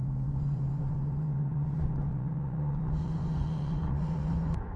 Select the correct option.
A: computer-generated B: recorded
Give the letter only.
A